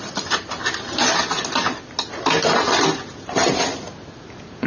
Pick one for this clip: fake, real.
real